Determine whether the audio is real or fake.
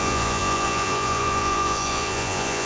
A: fake